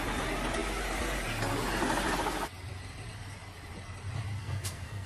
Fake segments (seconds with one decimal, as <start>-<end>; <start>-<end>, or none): 4.4-5.1